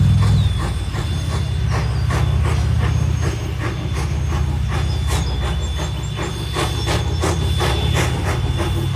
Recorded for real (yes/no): yes